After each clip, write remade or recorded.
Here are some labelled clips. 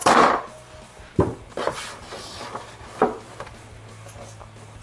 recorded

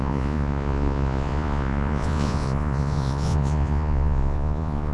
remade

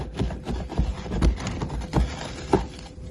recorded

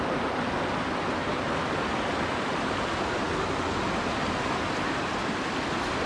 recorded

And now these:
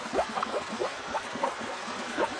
remade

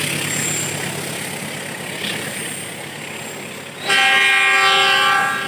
recorded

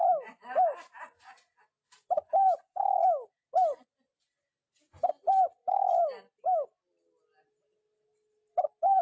recorded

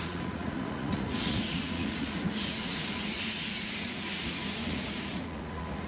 remade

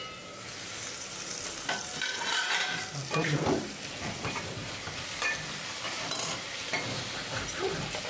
remade